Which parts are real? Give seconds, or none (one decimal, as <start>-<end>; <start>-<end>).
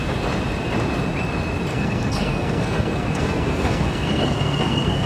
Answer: 0.0-1.7